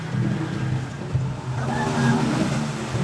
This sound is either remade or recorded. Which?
recorded